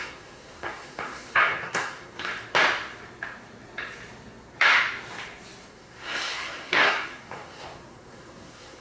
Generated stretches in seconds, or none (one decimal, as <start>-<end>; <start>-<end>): 0.0-2.3; 5.7-8.8